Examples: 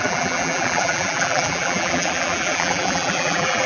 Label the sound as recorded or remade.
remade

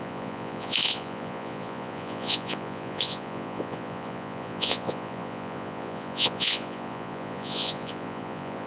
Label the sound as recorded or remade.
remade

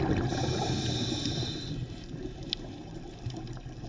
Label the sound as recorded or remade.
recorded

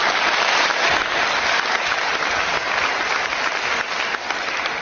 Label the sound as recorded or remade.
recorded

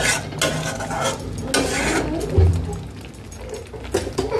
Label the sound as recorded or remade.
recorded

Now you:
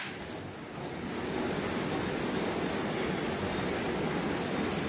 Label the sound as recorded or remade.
recorded